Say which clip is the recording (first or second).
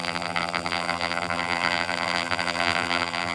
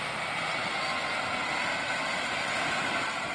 second